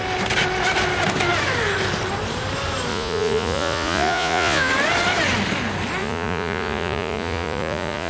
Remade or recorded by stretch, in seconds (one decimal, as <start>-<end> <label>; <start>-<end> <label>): 0.0-2.9 recorded; 2.9-4.7 remade; 4.7-6.0 recorded; 6.0-8.1 remade